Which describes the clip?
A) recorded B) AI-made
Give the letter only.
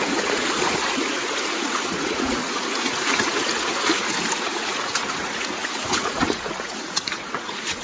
B